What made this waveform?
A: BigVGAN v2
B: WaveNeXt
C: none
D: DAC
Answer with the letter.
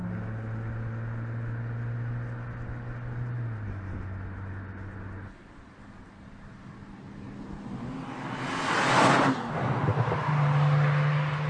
C